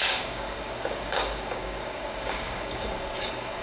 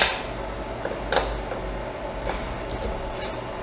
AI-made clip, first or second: first